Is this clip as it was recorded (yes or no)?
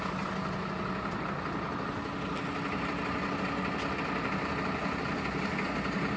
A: yes